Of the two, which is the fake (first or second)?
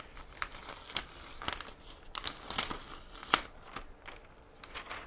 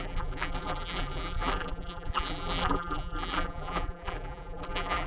second